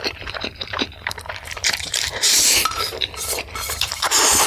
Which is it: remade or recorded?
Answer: remade